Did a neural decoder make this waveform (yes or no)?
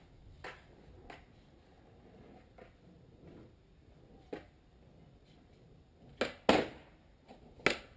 no